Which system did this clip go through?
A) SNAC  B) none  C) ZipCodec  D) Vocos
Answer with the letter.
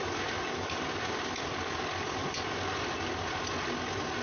B